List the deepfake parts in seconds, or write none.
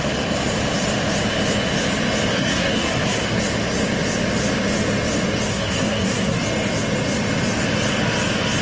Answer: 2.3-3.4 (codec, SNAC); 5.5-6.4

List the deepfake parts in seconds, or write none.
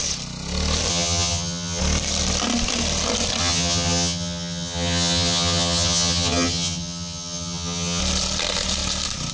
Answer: 0.9-1.8 (vocoder, HiFi-GAN); 3.4-8.0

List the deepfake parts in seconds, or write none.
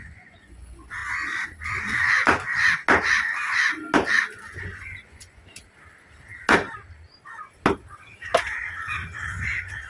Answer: 0.0-1.0 (vocoder, Vocos); 4.6-5.4; 9.3-9.9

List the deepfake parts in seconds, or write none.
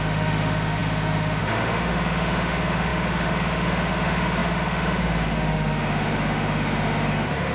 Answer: 0.0-7.5 (autoencoder, DAC-VAE)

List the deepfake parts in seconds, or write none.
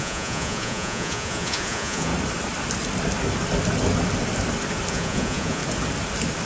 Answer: 0.0-2.1 (vocoder, Vocos); 4.9-5.6